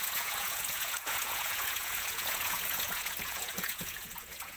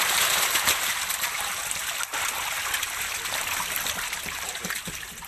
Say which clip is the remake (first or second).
first